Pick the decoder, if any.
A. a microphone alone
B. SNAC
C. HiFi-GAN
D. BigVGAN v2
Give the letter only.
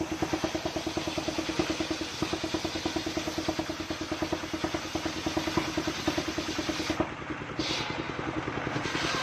A